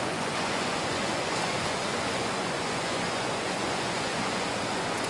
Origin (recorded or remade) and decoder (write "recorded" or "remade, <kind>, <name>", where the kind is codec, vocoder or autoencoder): remade, vocoder, Vocos